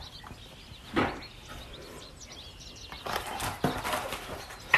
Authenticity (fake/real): real